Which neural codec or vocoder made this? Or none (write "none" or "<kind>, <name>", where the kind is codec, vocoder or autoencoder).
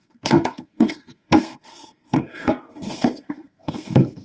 codec, SNAC